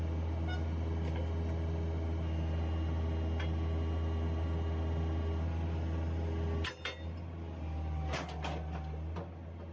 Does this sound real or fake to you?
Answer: real